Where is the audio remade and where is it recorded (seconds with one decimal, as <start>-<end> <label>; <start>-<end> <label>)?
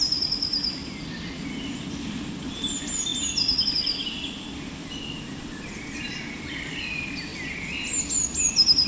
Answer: 0.0-0.8 remade; 0.8-1.7 recorded; 1.7-3.1 remade; 3.1-3.7 recorded; 3.7-7.3 remade; 7.3-8.0 recorded; 8.0-8.9 remade